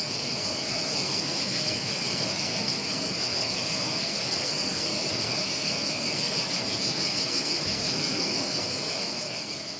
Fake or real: fake